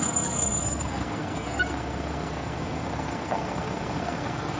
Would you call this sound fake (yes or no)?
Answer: yes